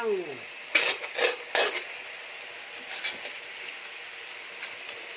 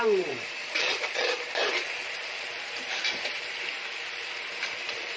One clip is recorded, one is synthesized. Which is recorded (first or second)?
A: first